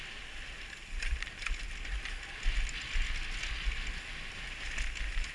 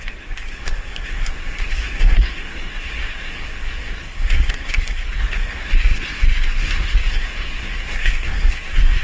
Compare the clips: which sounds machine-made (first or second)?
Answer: second